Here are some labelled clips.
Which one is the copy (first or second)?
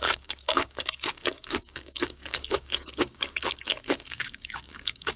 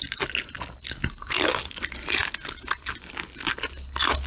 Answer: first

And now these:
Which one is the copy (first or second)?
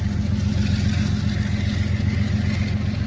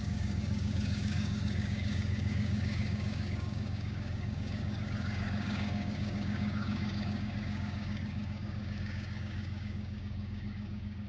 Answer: second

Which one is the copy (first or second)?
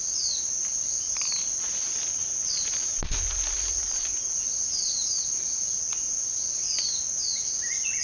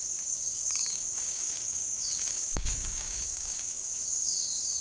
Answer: second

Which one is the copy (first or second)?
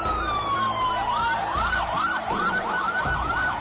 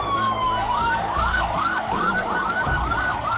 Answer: second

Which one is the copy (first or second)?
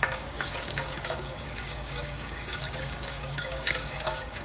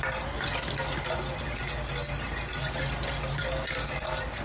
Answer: first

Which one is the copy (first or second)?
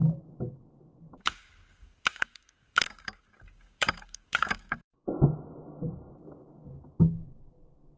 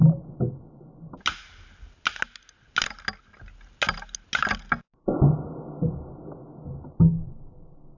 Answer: first